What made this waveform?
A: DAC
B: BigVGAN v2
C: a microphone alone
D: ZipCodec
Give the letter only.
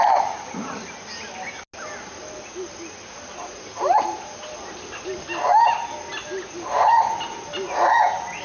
C